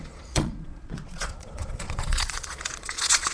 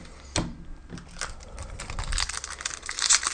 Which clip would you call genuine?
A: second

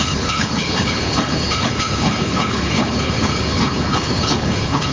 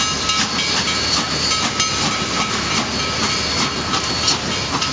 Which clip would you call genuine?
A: second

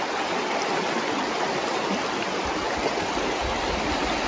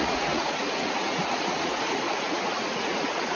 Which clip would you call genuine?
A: first